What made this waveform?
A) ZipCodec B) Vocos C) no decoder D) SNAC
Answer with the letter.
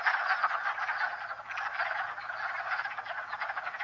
C